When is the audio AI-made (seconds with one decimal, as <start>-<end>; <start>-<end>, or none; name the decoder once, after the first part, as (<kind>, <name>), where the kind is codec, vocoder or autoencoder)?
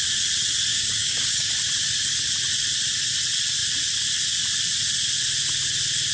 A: 0.7-1.5 (codec, DAC)